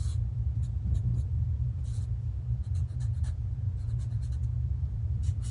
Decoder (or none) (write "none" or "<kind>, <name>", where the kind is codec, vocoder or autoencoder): vocoder, Vocos